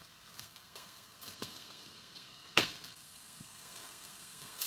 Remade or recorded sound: remade